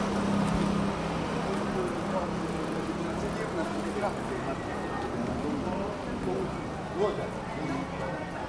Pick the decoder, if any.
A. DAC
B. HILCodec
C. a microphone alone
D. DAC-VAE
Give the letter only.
C